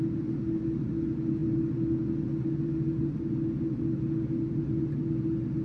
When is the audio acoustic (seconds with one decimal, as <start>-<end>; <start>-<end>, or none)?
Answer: 0.0-5.6